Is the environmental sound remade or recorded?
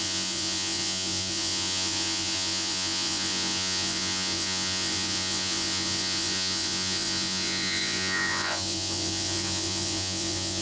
remade